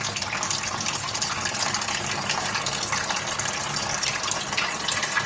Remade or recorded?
recorded